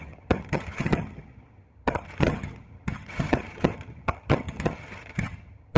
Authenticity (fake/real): fake